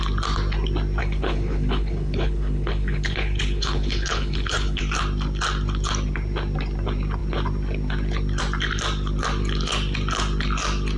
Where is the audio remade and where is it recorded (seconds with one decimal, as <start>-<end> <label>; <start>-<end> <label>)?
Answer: 0.0-1.0 recorded; 1.0-4.8 remade; 4.8-11.0 recorded